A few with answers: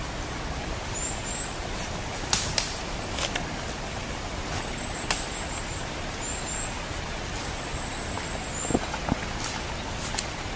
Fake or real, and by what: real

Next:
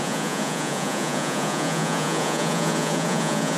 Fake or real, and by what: fake, vocoder, Vocos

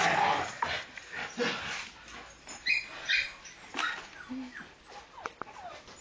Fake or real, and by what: real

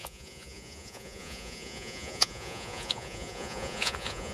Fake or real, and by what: fake, vocoder, Vocos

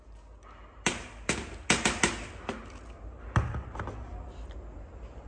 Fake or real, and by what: real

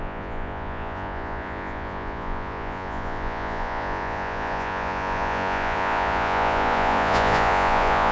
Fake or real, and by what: fake, vocoder, Vocos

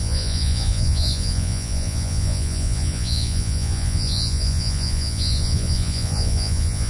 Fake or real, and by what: fake, vocoder, Vocos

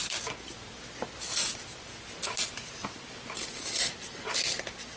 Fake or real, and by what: real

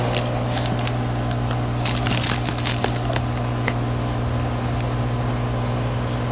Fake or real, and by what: real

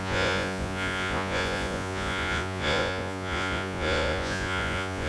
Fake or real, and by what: fake, vocoder, Vocos